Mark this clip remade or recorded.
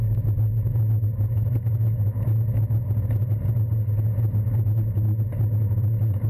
recorded